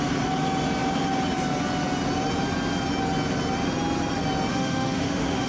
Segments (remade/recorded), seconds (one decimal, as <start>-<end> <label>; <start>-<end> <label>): 0.0-4.5 recorded; 4.5-5.5 remade